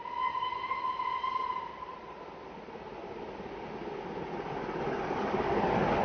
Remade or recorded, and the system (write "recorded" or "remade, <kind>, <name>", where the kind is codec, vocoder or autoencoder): recorded